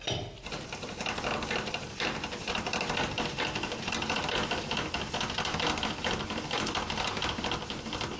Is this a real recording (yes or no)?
yes